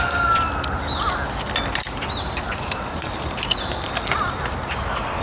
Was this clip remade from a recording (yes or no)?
no